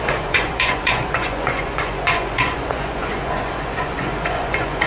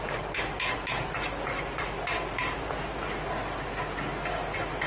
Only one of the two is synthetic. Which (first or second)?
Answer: first